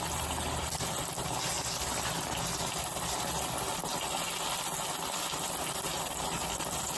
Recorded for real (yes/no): yes